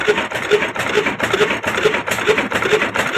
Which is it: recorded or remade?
recorded